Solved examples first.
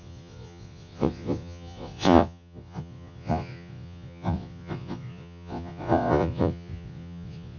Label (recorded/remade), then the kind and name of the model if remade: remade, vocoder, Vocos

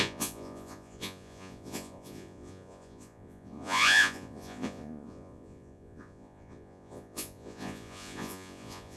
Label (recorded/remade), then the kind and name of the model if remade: remade, vocoder, Vocos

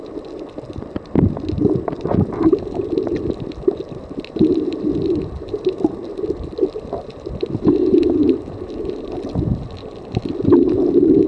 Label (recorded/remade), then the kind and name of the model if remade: remade, vocoder, BigVGAN v2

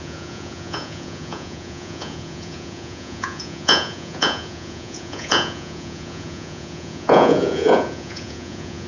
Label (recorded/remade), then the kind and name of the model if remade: remade, vocoder, Vocos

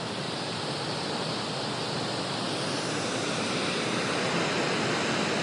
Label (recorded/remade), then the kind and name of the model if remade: recorded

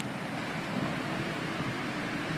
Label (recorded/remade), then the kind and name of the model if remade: recorded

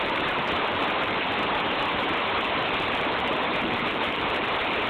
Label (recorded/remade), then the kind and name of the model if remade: remade, vocoder, BigVGAN v2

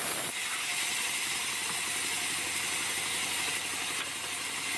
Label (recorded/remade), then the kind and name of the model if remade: recorded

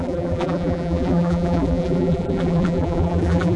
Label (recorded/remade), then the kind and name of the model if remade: remade, vocoder, BigVGAN v2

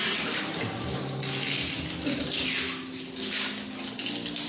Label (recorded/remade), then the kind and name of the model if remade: recorded